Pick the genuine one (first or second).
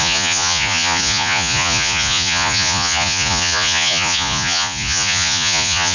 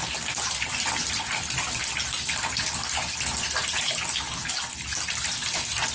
second